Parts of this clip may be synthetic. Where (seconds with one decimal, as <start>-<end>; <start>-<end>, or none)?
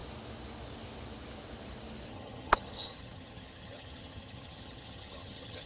2.1-5.7